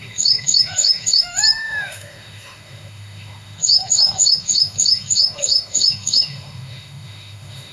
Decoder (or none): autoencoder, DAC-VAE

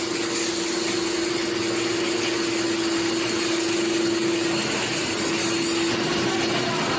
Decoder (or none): none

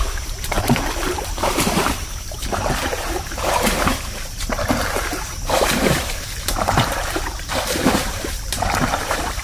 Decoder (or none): vocoder, BigVGAN v2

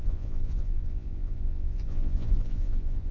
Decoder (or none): vocoder, Vocos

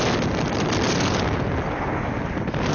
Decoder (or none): none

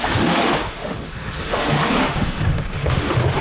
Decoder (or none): autoencoder, DAC-VAE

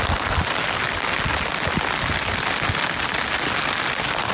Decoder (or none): none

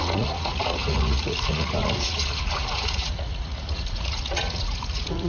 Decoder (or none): vocoder, Vocos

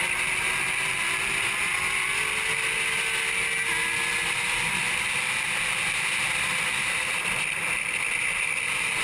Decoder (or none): none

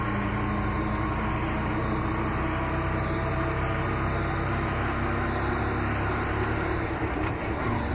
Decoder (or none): none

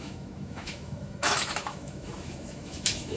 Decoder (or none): autoencoder, DAC-VAE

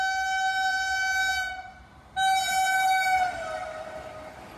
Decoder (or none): none